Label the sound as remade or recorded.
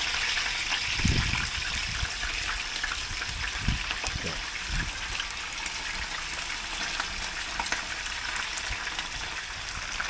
recorded